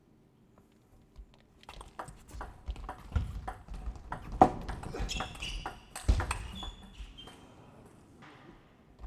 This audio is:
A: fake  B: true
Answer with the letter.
B